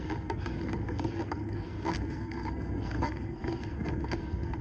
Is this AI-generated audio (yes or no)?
yes